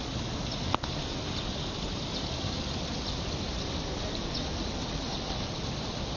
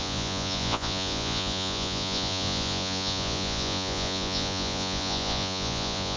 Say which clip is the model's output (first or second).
second